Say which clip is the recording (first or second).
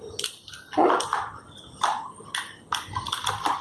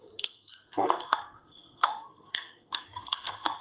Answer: first